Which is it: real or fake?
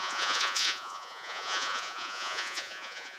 fake